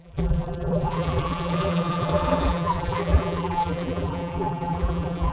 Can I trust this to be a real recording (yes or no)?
no